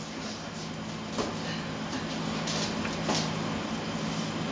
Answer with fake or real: real